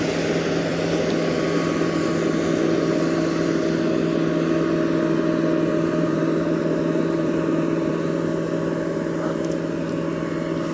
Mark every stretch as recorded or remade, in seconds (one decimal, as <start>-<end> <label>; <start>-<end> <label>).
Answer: 0.0-5.7 recorded; 5.7-7.9 remade; 7.9-10.7 recorded